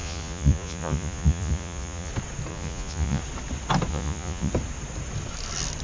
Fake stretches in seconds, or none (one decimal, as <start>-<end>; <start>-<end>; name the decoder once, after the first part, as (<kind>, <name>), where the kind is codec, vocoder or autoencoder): 0.0-2.1 (vocoder, Vocos); 2.5-3.2; 3.9-4.5